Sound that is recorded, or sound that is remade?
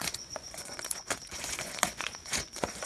remade